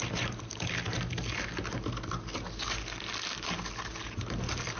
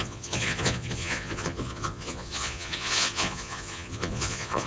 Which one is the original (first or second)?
first